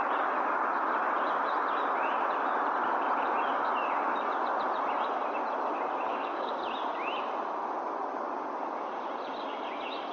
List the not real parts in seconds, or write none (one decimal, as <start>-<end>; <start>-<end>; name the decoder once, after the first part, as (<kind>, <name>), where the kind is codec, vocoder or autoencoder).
6.1-6.6 (codec, DAC)